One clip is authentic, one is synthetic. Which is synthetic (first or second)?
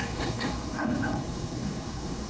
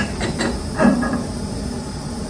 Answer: first